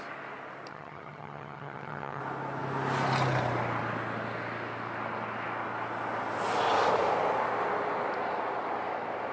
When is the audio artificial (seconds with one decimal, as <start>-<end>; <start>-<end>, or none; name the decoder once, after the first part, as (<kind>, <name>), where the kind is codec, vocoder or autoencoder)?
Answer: 0.7-2.2 (vocoder, HiFi-GAN)